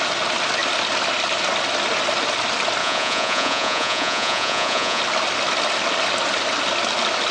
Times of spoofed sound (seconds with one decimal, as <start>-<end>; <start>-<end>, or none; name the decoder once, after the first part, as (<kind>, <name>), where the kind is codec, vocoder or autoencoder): 2.8-5.0 (vocoder, Vocos)